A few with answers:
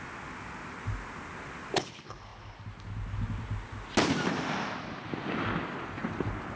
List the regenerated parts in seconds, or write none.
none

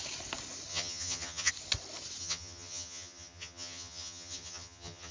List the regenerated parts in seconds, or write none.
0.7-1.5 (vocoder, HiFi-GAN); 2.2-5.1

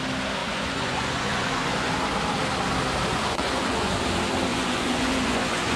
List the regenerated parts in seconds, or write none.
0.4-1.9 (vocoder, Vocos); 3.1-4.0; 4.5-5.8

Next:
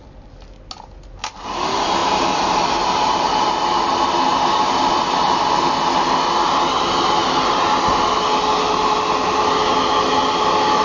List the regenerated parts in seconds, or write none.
2.0-2.7 (vocoder, BigVGAN v2); 4.3-5.7

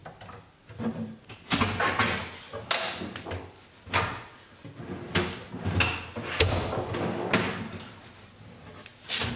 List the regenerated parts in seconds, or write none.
none

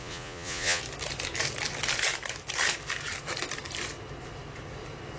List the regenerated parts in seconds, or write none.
0.0-0.8 (vocoder, Vocos)